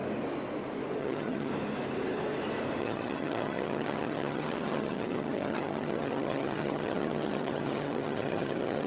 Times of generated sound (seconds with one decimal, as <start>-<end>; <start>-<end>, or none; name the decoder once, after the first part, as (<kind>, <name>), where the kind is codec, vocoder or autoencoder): 1.0-1.5 (vocoder, HiFi-GAN); 2.8-8.9